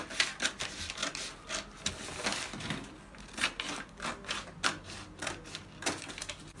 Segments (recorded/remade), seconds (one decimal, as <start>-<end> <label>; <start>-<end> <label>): 0.0-6.6 recorded